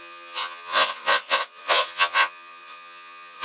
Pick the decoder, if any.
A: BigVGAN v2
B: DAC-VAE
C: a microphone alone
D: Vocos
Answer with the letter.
D